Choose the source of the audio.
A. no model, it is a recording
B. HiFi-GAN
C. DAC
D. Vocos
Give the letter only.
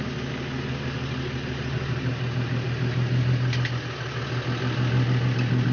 A